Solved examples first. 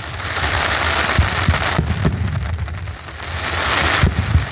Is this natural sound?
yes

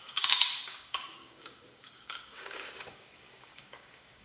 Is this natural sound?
no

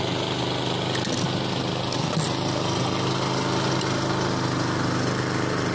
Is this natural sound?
yes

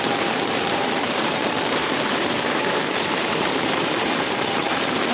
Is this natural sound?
no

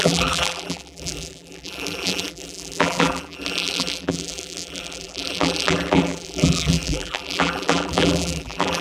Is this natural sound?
no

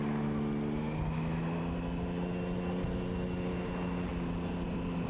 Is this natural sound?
yes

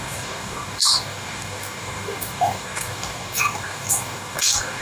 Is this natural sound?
no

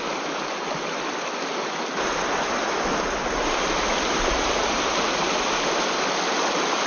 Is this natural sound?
yes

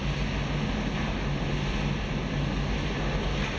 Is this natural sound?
yes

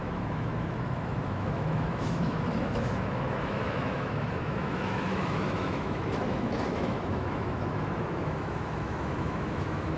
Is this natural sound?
no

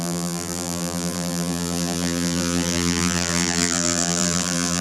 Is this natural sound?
no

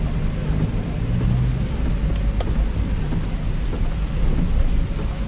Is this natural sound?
yes